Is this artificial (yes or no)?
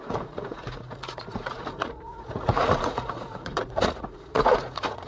yes